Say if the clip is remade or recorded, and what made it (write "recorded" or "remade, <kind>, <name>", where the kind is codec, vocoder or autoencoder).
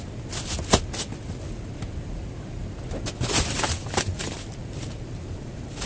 recorded